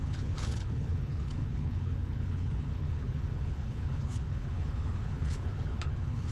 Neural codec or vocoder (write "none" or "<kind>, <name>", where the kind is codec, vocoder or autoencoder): codec, HILCodec